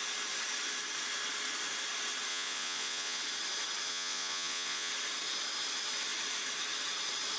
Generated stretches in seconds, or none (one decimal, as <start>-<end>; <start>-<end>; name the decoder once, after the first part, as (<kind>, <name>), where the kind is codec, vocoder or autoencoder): 2.3-3.2 (vocoder, Vocos); 3.9-4.9